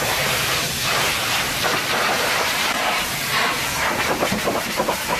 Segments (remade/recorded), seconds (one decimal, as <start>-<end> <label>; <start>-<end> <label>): 0.0-5.2 remade